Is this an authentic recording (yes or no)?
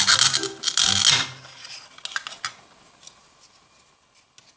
yes